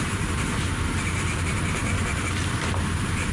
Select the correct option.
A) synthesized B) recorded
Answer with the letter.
B